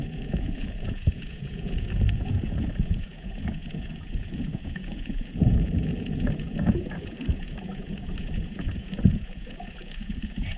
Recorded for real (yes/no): no